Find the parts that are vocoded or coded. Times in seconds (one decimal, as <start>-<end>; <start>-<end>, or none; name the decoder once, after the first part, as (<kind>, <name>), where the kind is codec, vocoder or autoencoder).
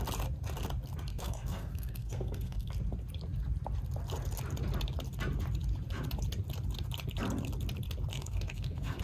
1.1-2.7 (codec, SNAC); 8.1-9.0